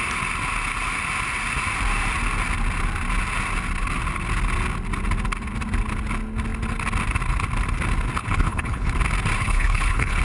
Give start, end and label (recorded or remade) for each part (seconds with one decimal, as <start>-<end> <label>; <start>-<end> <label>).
0.0-8.2 recorded; 8.2-8.9 remade; 8.9-9.4 recorded; 9.4-10.2 remade